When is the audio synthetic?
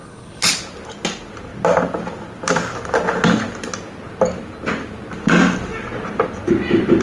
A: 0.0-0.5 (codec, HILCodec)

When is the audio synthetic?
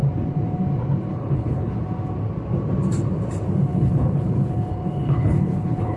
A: 1.1-1.8 (codec, HILCodec); 3.7-6.0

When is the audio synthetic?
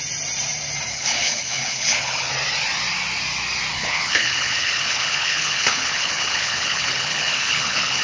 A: 0.9-2.3 (codec, HILCodec); 3.7-8.0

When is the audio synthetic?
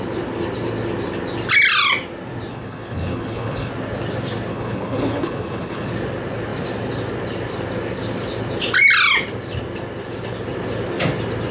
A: 2.5-3.7 (codec, HILCodec); 4.5-5.9